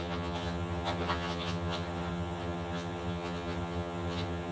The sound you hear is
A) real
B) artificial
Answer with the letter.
B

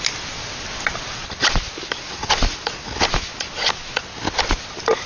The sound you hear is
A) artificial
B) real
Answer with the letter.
B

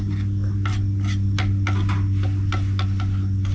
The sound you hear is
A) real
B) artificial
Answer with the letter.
A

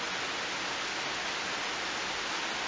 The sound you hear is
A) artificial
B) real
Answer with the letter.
B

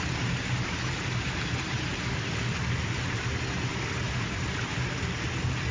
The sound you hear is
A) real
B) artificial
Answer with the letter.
A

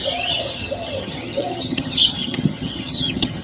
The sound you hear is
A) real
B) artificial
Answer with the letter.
B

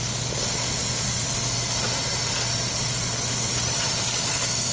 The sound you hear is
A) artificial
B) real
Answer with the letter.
B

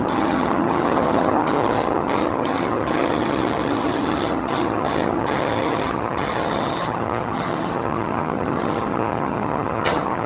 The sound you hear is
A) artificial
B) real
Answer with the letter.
A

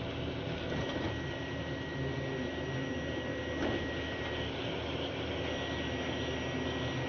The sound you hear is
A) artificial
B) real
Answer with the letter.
B